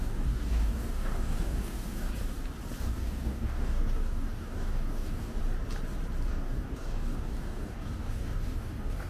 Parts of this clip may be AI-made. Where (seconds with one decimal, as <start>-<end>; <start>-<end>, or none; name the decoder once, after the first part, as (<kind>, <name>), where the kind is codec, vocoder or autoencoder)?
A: 0.0-2.1 (codec, DAC); 2.8-5.4; 6.3-9.1